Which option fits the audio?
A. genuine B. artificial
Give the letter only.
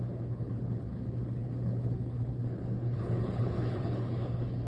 B